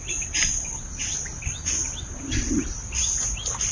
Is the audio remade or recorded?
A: recorded